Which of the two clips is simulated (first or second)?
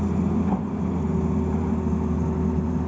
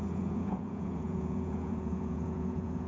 second